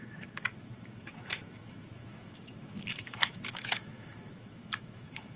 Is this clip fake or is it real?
fake